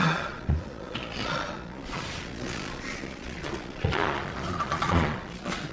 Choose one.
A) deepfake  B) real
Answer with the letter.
A